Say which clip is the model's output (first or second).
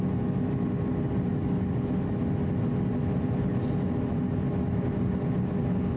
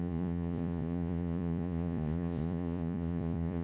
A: second